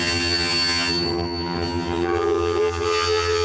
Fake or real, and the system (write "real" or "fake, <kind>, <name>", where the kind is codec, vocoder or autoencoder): fake, vocoder, HiFi-GAN